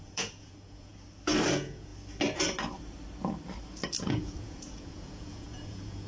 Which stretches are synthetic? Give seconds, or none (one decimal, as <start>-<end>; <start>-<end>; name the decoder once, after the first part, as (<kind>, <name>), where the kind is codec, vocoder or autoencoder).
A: 0.0-0.9 (vocoder, Vocos); 1.5-1.9; 4.1-6.1